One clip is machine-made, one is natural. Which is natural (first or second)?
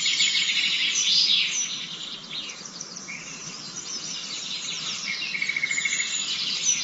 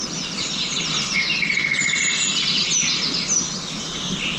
second